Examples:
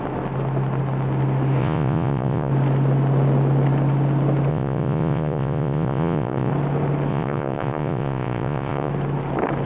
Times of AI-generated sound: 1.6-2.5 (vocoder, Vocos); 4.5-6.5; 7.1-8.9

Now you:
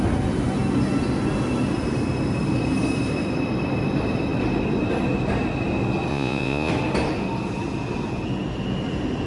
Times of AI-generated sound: 6.1-6.7 (vocoder, Vocos)

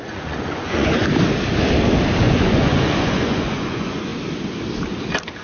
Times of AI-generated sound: 0.0-1.0 (vocoder, Vocos); 2.2-4.1

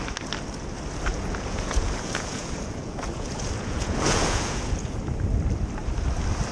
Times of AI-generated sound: 1.1-5.0 (vocoder, Vocos)